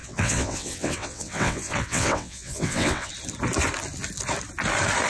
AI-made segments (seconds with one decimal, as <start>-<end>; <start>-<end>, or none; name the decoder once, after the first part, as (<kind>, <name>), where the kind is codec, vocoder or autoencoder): 0.0-3.1 (vocoder, WaveNeXt)